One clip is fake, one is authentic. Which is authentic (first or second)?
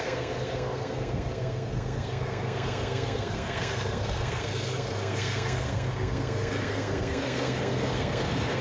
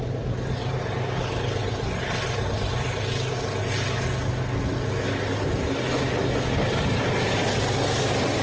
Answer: second